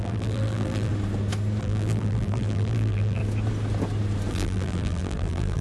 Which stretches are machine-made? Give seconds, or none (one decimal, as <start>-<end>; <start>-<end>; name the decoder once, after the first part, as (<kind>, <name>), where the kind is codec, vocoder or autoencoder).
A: 0.0-0.9 (vocoder, BigVGAN v2); 1.6-3.2; 4.3-5.6